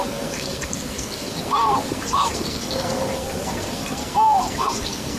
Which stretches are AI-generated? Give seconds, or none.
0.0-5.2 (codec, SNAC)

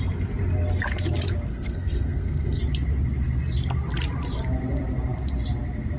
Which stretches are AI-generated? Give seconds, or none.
1.5-2.6 (codec, SNAC)

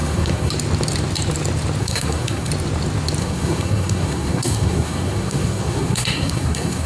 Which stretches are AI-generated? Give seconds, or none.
0.0-0.5 (codec, SNAC); 1.8-2.5; 3.2-6.9

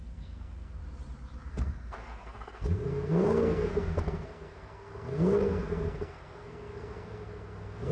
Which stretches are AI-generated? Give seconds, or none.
0.0-0.8 (codec, SNAC); 1.5-7.9

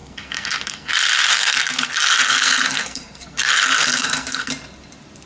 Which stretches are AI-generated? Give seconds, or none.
0.0-0.9 (codec, SNAC); 1.3-4.5

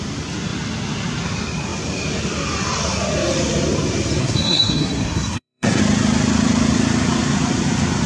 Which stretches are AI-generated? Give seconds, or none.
4.2-5.8 (codec, SNAC)